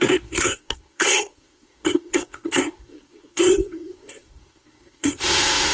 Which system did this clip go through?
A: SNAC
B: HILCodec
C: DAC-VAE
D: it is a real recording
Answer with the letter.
A